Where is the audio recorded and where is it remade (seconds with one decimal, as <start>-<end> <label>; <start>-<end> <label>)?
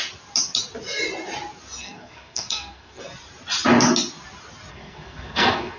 0.0-1.8 recorded; 1.8-3.0 remade; 3.0-4.7 recorded; 4.7-5.8 remade